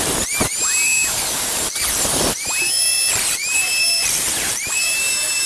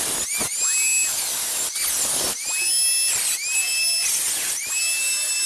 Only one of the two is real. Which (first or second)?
second